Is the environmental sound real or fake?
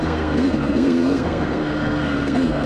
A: fake